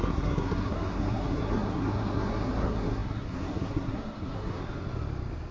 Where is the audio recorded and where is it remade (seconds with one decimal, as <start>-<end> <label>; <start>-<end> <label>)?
0.0-4.6 remade; 4.6-5.5 recorded